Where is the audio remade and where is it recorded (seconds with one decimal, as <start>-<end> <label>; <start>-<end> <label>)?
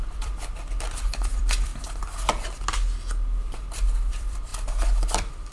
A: 0.0-1.7 remade; 1.7-4.1 recorded; 4.1-5.5 remade